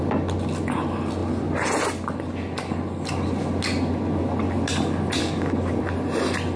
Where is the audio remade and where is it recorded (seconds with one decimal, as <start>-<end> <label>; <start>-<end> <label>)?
0.0-5.2 recorded; 5.2-5.8 remade; 5.8-6.6 recorded